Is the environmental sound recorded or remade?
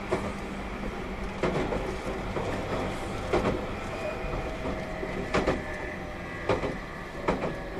recorded